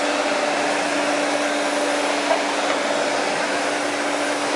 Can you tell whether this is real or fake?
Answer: real